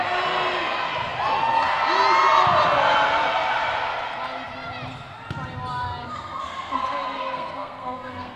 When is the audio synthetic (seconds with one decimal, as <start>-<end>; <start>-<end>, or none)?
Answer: 6.0-8.4